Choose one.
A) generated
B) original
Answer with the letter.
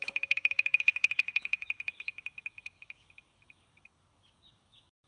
A